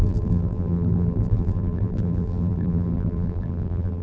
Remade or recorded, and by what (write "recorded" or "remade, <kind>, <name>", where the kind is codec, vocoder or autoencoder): remade, vocoder, BigVGAN v2